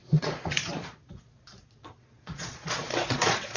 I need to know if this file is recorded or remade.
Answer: remade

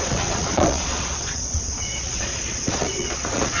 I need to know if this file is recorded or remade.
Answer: remade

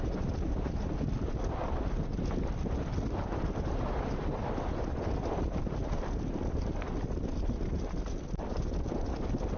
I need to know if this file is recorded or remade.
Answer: recorded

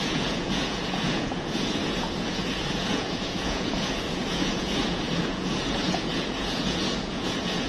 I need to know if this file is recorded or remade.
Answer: remade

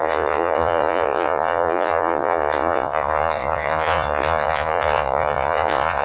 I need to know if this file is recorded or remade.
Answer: remade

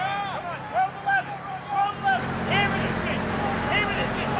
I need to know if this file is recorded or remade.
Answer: recorded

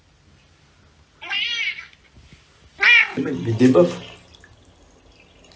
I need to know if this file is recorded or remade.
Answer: recorded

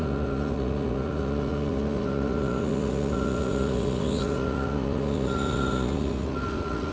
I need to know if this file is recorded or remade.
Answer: remade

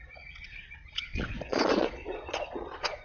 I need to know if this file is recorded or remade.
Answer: remade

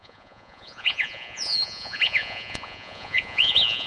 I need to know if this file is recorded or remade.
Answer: remade